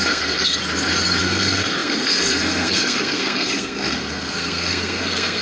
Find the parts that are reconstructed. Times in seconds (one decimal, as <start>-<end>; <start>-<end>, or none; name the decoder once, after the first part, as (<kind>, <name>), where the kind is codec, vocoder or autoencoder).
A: 0.0-0.6 (codec, SNAC); 1.2-5.4